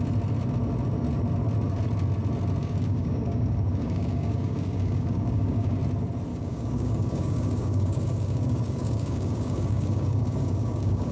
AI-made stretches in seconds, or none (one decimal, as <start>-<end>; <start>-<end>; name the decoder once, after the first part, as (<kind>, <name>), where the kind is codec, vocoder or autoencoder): 2.6-5.8 (codec, DAC); 6.3-11.1